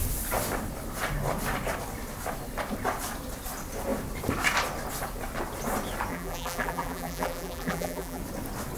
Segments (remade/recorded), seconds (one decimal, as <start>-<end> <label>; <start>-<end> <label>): 0.0-6.1 recorded; 6.1-8.2 remade; 8.2-8.8 recorded